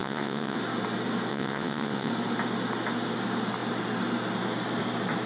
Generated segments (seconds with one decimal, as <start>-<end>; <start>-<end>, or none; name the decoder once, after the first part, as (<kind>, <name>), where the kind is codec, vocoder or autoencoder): 0.0-0.6 (vocoder, WaveNeXt); 1.3-2.1